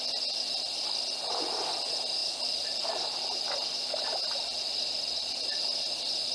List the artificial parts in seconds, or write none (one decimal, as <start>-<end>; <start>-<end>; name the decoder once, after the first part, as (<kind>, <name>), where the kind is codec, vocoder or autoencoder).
none